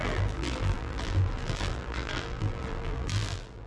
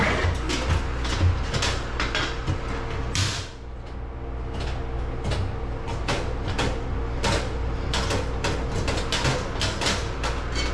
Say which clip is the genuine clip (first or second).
second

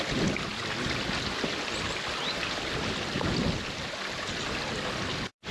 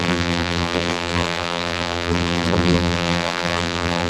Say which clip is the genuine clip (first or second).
first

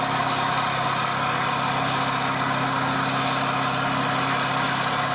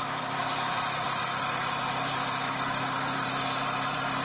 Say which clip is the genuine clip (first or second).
first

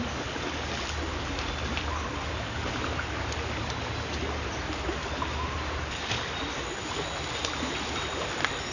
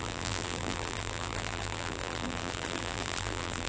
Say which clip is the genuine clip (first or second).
first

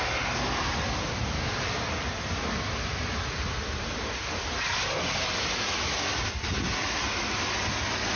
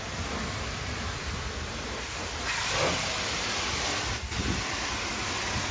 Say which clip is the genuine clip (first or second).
first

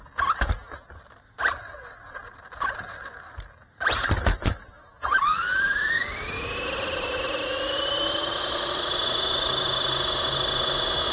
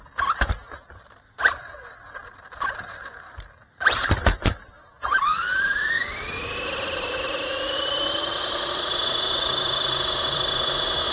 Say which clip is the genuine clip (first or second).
first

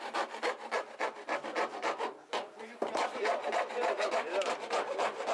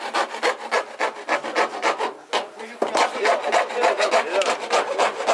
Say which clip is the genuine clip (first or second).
second